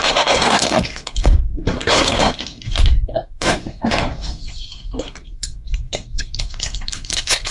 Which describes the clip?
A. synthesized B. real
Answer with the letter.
A